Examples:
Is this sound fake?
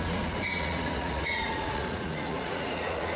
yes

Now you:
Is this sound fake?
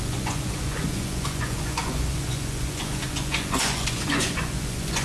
yes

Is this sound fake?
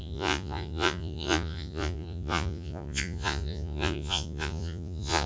yes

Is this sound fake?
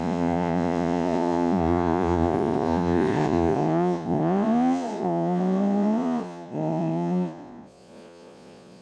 yes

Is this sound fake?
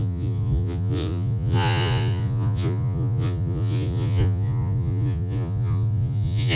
yes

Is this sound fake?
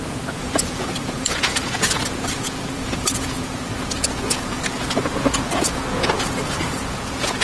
yes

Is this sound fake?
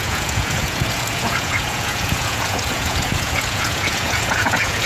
yes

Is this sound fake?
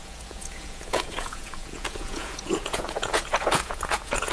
yes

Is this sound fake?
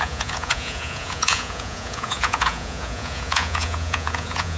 yes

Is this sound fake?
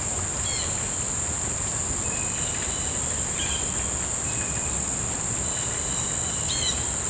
no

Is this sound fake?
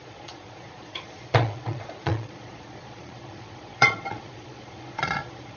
yes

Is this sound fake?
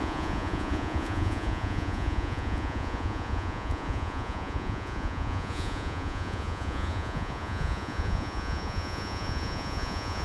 yes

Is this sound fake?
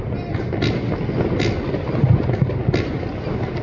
no